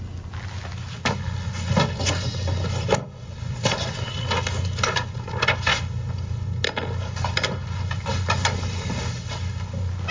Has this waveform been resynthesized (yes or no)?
no